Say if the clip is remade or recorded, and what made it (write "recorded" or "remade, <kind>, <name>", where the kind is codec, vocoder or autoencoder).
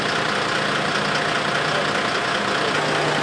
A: recorded